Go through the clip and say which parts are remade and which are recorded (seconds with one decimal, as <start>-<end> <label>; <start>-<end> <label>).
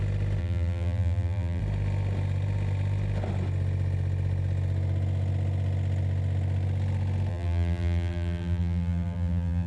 0.0-0.4 recorded; 0.4-1.6 remade; 1.6-7.3 recorded; 7.3-9.7 remade